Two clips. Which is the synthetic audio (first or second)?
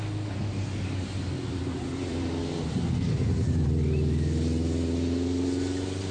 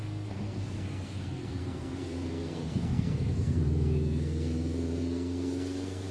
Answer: second